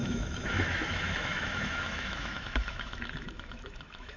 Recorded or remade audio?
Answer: remade